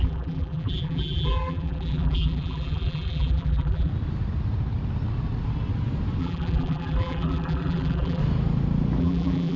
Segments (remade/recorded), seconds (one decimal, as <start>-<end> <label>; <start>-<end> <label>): 0.0-3.9 remade; 3.9-6.2 recorded; 6.2-8.2 remade; 8.2-9.0 recorded; 9.0-9.6 remade